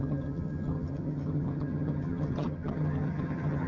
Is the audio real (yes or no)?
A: no